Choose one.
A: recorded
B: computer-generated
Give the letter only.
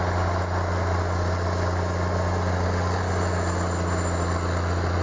A